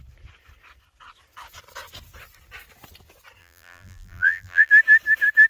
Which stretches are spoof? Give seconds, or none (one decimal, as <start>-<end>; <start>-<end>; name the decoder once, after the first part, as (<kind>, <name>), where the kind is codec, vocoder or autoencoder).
3.4-4.7 (vocoder, BigVGAN v2)